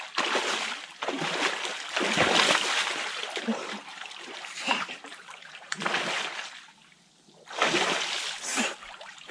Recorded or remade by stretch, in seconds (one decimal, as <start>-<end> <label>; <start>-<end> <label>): 0.0-3.9 recorded; 3.9-5.8 remade; 5.8-8.5 recorded; 8.5-9.3 remade